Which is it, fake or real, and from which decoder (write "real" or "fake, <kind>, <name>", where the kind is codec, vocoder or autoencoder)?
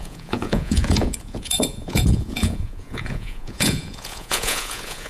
fake, vocoder, Vocos